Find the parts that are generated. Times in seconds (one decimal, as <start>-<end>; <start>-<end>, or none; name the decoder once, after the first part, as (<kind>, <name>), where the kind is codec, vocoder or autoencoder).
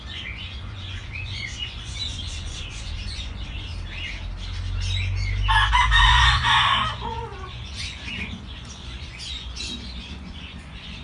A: 0.0-3.7 (vocoder, Vocos); 5.7-11.0